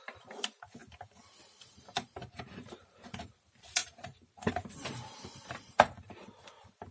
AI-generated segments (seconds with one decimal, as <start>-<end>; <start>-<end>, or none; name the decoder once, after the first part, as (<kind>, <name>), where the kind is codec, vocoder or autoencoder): 0.0-0.8 (vocoder, BigVGAN v2); 1.6-6.9